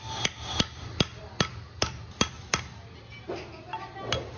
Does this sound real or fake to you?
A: real